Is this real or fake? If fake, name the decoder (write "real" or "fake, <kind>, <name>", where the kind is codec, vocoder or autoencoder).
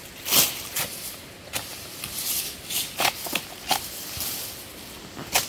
real